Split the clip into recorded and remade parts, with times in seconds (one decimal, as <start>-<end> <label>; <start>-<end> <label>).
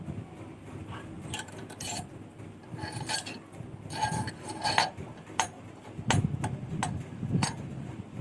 0.0-8.2 recorded